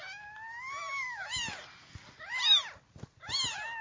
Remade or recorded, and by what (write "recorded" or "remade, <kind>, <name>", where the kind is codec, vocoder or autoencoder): recorded